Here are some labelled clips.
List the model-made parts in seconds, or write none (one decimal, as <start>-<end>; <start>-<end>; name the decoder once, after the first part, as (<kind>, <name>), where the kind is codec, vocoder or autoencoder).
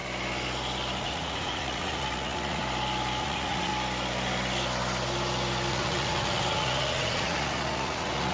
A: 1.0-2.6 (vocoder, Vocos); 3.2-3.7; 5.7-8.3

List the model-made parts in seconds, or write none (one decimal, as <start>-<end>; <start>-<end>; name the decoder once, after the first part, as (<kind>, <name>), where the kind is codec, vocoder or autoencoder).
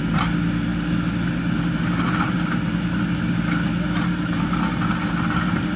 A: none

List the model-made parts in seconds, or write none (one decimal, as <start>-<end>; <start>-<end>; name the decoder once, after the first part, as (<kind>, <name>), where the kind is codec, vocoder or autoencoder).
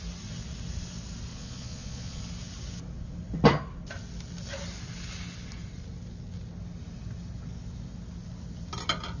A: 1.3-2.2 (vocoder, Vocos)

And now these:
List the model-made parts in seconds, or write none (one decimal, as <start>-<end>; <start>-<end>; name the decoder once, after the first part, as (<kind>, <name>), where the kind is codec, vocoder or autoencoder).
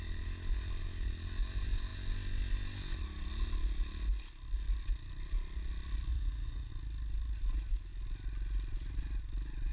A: 6.1-6.7 (vocoder, Vocos)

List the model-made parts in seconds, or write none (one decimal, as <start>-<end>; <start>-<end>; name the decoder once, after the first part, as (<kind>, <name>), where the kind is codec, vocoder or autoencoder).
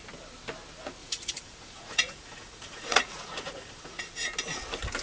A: 1.0-4.0 (vocoder, Vocos)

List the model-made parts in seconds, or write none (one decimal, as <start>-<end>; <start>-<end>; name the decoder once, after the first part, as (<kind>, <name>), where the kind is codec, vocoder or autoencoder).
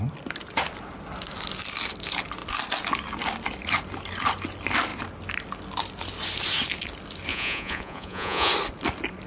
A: 7.3-8.5 (vocoder, Vocos)